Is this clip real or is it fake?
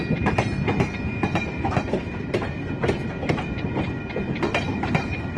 real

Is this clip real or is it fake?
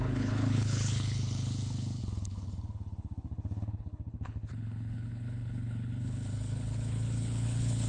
fake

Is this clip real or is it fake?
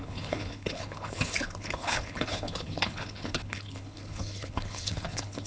fake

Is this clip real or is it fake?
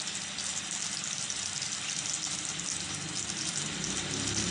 real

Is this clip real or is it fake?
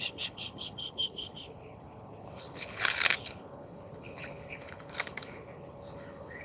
fake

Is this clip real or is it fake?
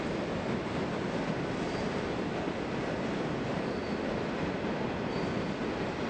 real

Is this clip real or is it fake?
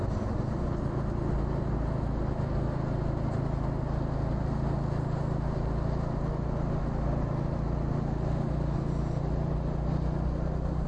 real